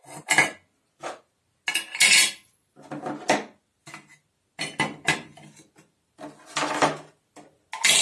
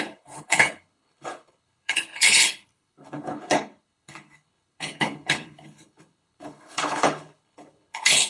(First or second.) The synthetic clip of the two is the second